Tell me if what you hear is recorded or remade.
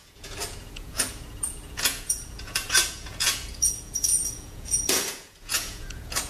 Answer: remade